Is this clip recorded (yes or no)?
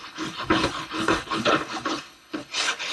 no